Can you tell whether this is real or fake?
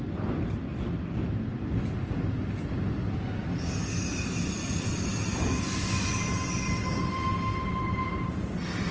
real